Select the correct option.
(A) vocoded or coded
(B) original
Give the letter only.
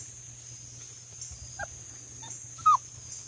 B